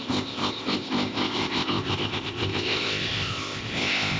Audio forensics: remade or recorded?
remade